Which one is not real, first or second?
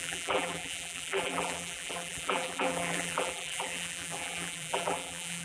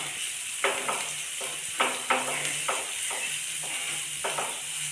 first